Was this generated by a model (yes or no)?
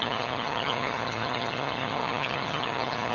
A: yes